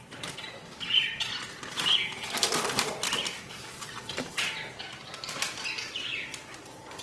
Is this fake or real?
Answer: real